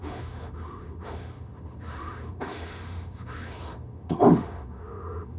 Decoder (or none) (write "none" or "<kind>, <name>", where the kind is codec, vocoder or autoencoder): autoencoder, DAC-VAE